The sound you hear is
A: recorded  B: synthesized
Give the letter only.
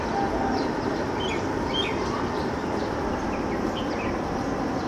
A